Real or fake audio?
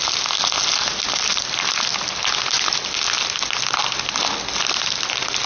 real